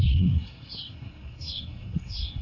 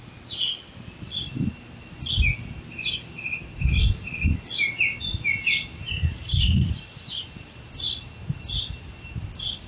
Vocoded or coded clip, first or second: first